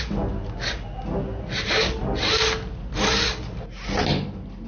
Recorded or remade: recorded